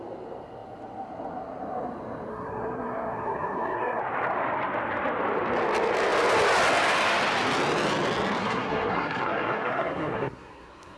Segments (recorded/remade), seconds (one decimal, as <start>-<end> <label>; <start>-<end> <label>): 0.0-2.3 recorded; 2.3-4.0 remade; 4.0-8.4 recorded; 8.4-11.0 remade